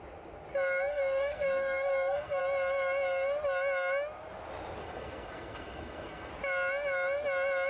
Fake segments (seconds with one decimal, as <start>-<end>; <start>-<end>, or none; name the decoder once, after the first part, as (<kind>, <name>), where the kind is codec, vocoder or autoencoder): 0.9-2.4 (codec, SNAC); 4.8-6.3